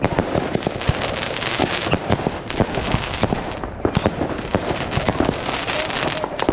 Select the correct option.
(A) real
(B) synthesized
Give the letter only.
A